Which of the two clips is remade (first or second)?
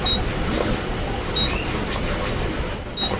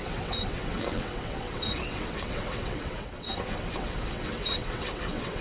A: second